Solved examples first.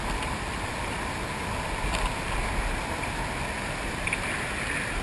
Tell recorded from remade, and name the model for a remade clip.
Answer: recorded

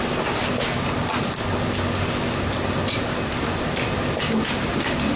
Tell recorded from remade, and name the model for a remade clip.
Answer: recorded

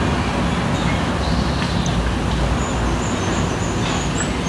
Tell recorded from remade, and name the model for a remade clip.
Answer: recorded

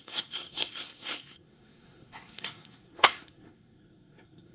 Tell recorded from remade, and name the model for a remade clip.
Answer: remade, codec, SNAC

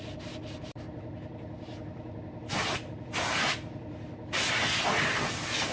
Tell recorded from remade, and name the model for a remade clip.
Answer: recorded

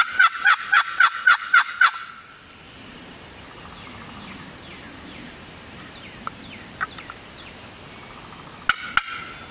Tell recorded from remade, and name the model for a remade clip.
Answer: recorded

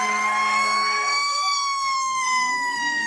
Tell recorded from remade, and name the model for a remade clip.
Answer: remade, codec, SNAC